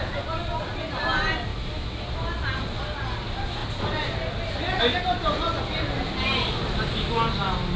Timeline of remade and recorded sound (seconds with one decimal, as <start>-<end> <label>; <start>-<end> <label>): 0.0-1.5 recorded; 1.5-2.0 remade; 2.0-7.8 recorded